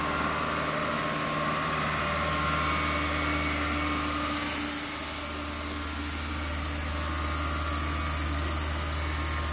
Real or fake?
real